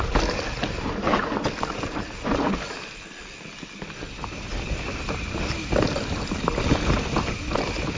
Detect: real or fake real